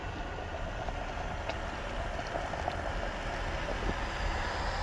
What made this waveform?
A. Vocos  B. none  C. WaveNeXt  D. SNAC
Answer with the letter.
B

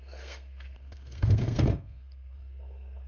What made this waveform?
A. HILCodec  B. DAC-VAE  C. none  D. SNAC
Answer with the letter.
D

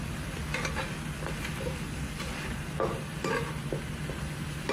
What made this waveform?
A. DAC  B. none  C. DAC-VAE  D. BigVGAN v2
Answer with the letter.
B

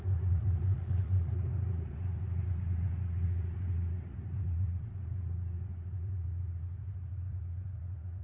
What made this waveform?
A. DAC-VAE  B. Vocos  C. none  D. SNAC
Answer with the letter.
B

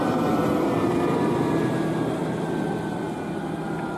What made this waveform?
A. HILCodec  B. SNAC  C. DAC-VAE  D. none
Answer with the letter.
D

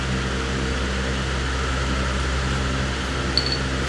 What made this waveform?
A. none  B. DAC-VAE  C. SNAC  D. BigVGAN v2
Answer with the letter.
A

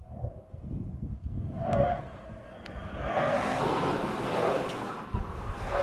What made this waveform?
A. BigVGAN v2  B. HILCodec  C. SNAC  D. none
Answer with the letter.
C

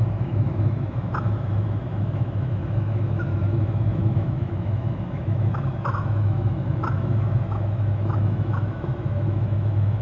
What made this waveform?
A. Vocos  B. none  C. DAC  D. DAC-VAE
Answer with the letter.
D